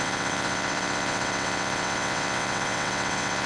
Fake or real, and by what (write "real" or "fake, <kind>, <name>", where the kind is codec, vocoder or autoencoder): fake, vocoder, WaveNeXt